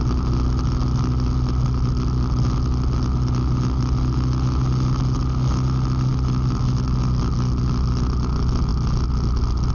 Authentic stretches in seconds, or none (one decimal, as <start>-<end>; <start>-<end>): 0.0-9.7